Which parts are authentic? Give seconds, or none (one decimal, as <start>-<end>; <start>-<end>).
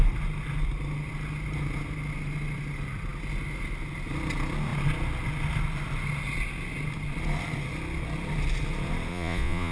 0.0-9.1